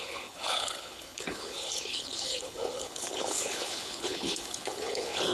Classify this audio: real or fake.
fake